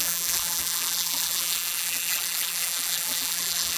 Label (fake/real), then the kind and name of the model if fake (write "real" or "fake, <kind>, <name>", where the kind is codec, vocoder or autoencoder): fake, vocoder, BigVGAN v2